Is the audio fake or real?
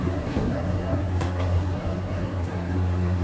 fake